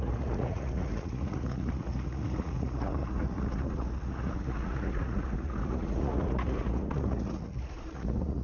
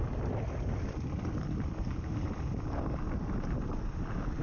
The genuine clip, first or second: second